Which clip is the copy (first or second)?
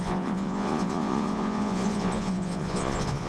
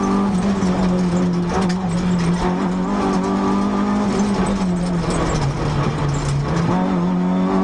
first